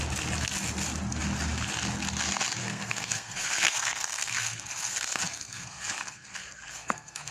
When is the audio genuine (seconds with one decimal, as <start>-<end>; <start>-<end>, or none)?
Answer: 0.0-2.6